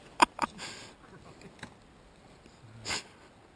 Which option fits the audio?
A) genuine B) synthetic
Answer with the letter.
A